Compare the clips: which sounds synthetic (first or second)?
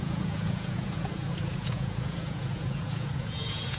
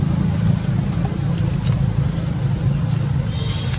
first